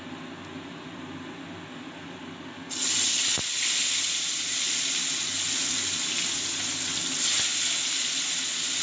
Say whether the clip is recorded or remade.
recorded